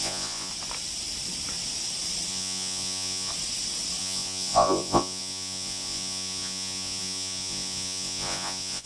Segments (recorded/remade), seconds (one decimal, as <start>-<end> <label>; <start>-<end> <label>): 0.0-0.5 remade; 0.5-2.3 recorded; 2.3-3.3 remade; 3.3-4.0 recorded; 4.0-8.9 remade